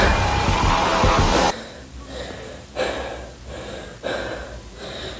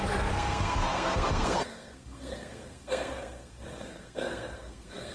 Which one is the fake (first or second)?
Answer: second